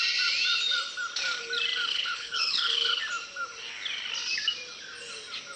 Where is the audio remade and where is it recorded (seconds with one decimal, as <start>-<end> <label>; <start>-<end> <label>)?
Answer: 0.0-1.9 recorded; 1.9-3.0 remade; 3.0-5.6 recorded